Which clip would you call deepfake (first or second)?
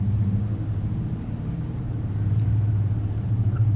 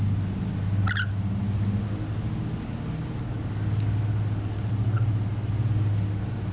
first